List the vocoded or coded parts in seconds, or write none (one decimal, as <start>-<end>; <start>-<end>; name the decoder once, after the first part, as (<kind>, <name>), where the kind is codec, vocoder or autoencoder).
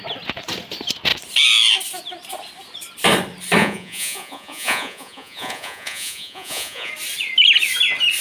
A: 3.6-6.9 (vocoder, Vocos)